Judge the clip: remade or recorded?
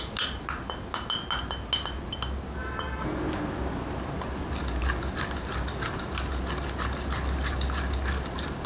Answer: recorded